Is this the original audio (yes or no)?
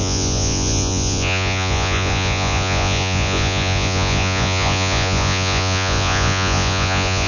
no